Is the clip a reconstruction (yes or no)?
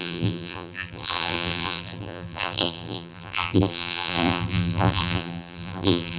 yes